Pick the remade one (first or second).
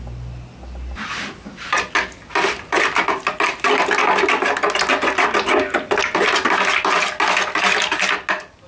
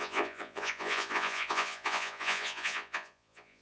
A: second